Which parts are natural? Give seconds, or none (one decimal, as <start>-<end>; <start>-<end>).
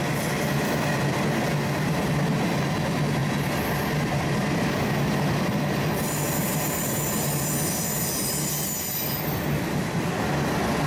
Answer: 0.0-10.9